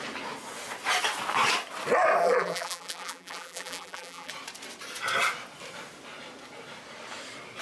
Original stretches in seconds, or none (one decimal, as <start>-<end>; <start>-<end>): 0.0-2.2; 4.3-7.6